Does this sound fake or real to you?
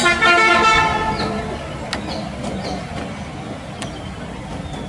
real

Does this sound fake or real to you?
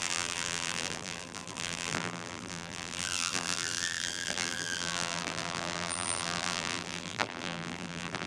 fake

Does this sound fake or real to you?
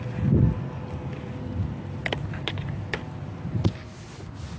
real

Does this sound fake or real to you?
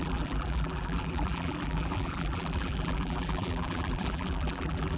fake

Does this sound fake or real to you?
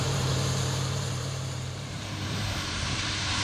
fake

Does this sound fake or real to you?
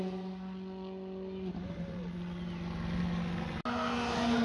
real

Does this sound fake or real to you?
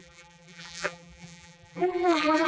fake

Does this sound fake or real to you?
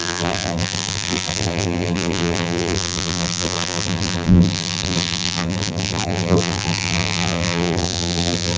fake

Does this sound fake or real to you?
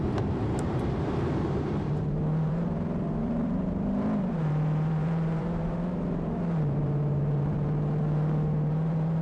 fake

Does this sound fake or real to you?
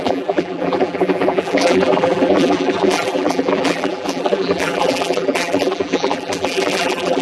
fake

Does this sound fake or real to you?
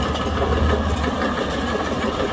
real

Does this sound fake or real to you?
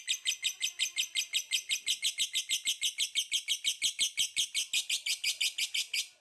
real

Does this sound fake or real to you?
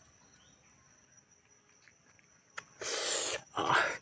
fake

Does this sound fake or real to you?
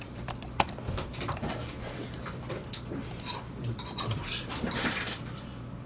fake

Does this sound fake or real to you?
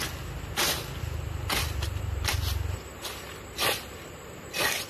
real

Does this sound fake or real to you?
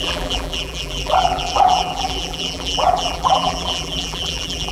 fake